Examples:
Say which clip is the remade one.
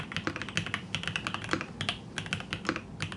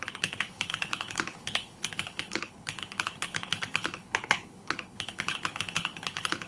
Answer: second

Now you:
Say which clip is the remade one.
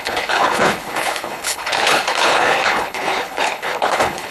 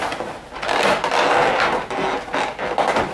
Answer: first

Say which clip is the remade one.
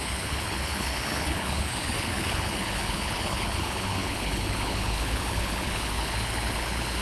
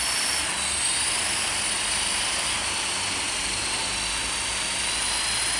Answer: first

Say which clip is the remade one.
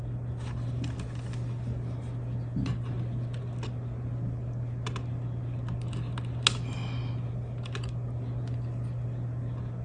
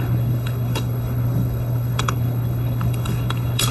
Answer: second